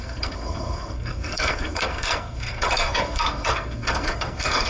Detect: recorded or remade remade